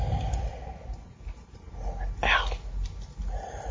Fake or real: real